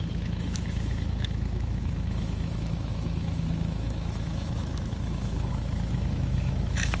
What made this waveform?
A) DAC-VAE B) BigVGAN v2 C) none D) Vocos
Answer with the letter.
A